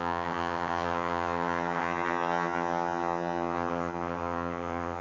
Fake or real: fake